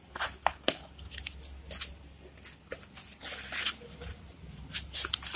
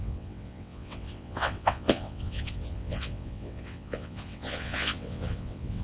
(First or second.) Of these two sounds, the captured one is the first